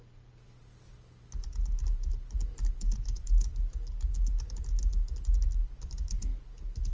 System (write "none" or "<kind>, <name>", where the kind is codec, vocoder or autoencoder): none